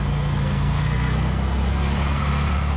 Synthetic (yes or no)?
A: yes